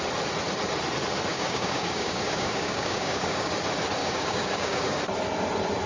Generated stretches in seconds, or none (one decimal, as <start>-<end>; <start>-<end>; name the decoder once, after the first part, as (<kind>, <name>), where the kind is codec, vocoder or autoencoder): 1.3-3.5 (codec, DAC); 4.0-5.0